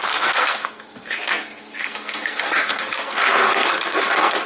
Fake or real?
fake